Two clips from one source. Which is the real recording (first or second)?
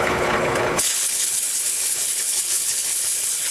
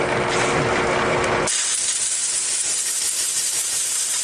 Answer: second